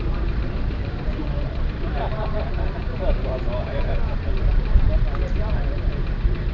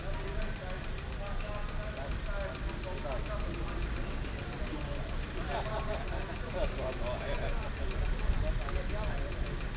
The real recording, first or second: second